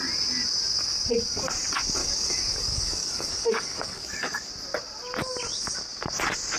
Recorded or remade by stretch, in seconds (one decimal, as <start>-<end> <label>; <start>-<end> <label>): 0.0-2.0 recorded; 2.0-4.5 remade; 4.5-6.6 recorded